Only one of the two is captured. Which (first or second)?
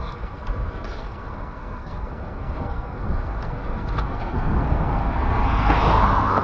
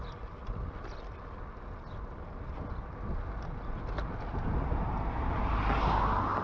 second